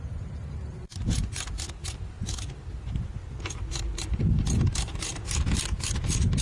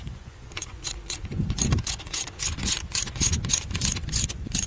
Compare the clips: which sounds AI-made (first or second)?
second